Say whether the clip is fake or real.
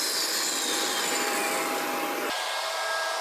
real